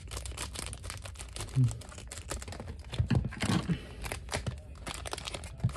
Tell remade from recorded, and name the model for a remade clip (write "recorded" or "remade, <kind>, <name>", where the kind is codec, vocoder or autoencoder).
recorded